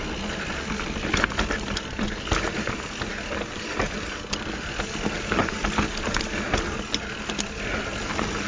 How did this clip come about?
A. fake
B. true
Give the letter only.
B